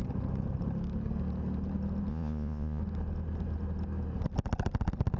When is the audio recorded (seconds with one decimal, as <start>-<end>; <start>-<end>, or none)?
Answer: 0.0-2.1; 2.8-5.2